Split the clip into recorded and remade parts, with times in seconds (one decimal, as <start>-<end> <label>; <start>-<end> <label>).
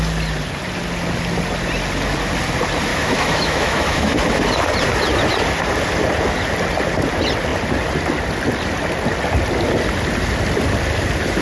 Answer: 0.0-2.9 recorded; 2.9-4.1 remade; 4.1-11.4 recorded